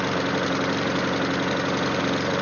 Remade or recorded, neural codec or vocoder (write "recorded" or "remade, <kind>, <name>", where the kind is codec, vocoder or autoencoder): recorded